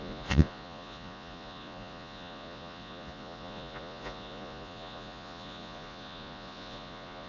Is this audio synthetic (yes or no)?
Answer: yes